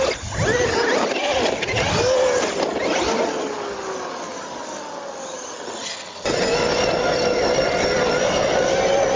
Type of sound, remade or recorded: recorded